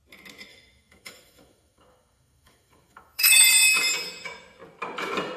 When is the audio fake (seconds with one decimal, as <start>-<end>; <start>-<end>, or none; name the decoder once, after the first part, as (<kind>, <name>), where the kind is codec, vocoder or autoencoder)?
0.5-3.4 (autoencoder, DAC-VAE)